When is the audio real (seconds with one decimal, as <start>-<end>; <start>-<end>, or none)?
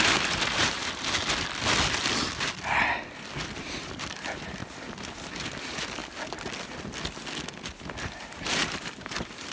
0.8-3.6; 4.6-5.6; 6.0-8.0